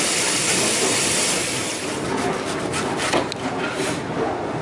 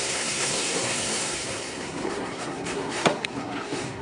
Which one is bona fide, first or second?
first